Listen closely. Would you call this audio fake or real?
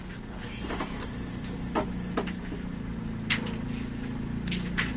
real